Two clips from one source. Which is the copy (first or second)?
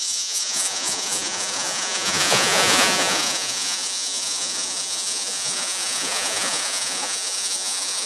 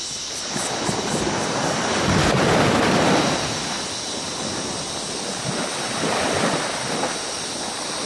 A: first